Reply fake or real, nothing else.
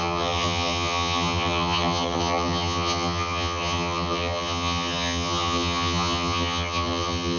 fake